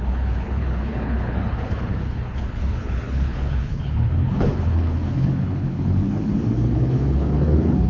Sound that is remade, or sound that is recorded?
remade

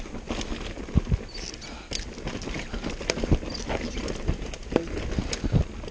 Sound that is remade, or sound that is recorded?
recorded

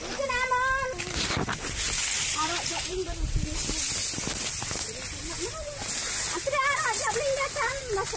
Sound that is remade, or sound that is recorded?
recorded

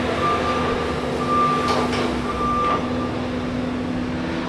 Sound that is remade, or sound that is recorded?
recorded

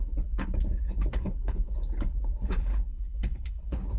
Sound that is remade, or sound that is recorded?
remade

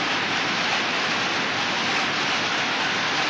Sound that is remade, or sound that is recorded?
recorded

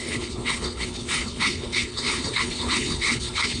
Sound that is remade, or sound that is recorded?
remade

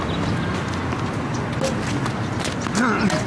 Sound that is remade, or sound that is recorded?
recorded